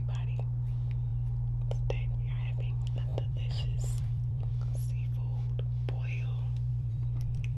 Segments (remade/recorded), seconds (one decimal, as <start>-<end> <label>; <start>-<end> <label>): 0.0-3.1 recorded; 3.1-4.5 remade; 4.5-6.7 recorded; 6.7-7.6 remade